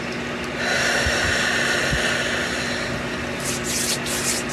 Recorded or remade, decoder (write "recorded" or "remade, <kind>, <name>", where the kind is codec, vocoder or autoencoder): recorded